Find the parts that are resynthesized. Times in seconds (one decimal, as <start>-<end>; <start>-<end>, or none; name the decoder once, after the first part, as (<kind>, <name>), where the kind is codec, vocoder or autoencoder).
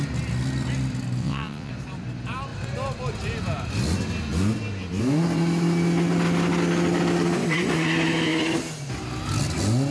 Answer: 1.2-1.7 (vocoder, WaveNeXt)